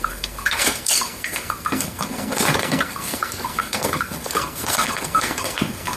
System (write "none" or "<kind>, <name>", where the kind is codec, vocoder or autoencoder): codec, SNAC